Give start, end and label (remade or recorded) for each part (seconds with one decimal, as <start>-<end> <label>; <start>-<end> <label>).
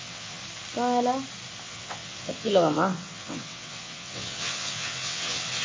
0.0-0.4 remade; 0.4-1.6 recorded; 1.6-5.6 remade